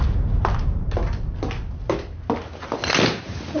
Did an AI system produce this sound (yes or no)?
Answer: no